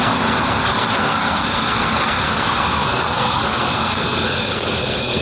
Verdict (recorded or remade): remade